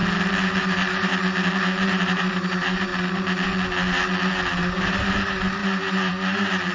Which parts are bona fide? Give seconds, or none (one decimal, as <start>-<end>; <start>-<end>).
0.0-0.6; 1.1-1.9; 2.9-4.6